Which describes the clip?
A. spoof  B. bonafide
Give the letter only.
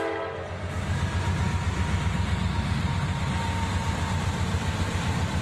B